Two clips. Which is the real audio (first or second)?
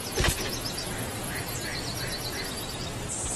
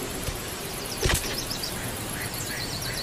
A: first